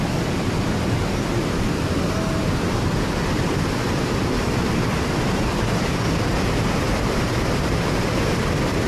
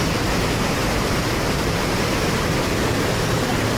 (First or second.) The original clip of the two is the second